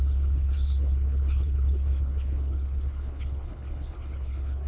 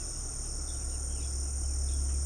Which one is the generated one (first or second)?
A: first